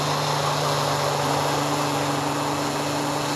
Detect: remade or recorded recorded